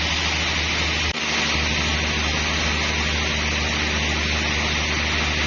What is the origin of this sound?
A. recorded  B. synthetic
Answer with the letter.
A